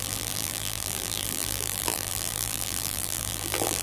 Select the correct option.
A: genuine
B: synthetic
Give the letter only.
B